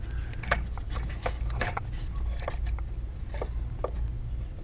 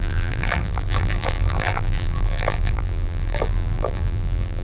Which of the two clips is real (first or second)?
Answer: first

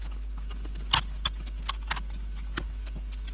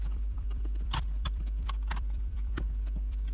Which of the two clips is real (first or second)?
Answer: first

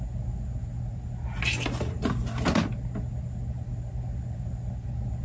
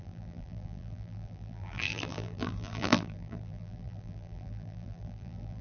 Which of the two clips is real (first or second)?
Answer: first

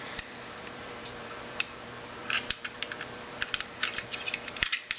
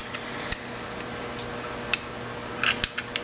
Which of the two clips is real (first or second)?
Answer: second